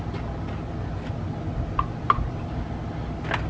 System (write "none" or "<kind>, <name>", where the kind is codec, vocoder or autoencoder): none